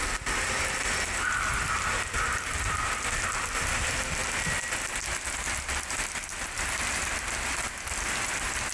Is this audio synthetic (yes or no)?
no